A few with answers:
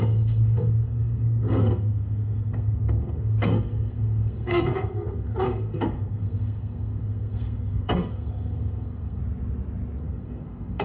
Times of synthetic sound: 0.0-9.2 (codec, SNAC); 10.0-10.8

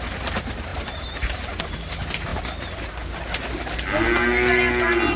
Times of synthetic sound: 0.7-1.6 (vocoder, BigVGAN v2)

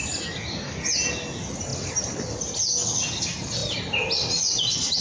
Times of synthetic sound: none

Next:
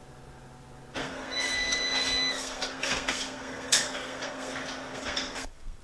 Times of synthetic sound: 1.0-4.5 (codec, SNAC); 4.9-5.8